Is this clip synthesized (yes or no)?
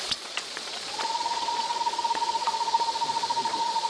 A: yes